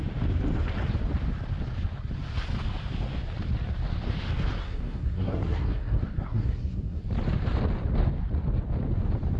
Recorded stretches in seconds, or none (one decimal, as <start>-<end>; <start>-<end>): 0.0-4.6; 7.0-9.4